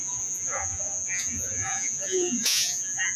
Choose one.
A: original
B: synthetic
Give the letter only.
B